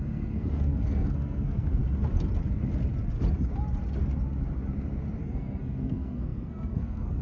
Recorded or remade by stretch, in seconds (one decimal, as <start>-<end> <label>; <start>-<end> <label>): 0.0-1.8 remade; 1.8-5.2 recorded; 5.2-7.2 remade